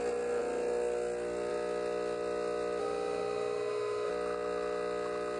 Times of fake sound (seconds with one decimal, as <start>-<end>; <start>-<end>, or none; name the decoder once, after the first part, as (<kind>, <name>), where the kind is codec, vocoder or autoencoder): 2.8-4.1 (autoencoder, DAC-VAE)